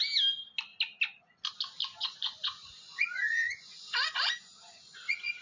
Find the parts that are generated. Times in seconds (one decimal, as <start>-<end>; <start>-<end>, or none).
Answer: 1.9-5.4